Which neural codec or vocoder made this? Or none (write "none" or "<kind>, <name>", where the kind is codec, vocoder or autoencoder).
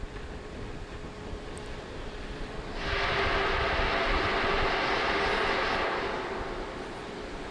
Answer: none